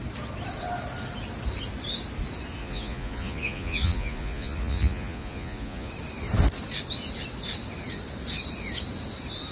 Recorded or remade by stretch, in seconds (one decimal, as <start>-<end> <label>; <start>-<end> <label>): 0.0-2.6 recorded; 2.6-5.9 remade; 5.9-9.5 recorded

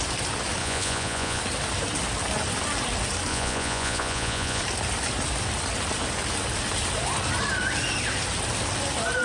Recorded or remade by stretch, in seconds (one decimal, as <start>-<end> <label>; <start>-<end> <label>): 0.0-0.6 recorded; 0.6-1.4 remade; 1.4-3.3 recorded; 3.3-4.6 remade; 4.6-9.2 recorded

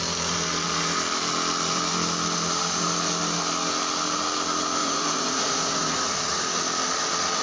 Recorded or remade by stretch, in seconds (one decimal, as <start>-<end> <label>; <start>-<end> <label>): 0.0-4.8 recorded; 4.8-6.1 remade; 6.1-7.4 recorded